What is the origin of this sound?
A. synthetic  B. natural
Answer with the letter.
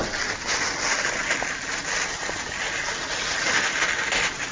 B